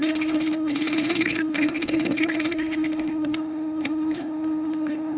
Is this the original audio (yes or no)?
no